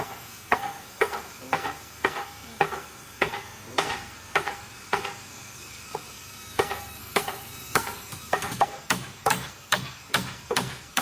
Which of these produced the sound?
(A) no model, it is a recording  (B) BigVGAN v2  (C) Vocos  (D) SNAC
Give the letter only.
D